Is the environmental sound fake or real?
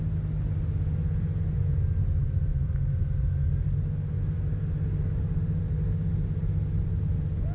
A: real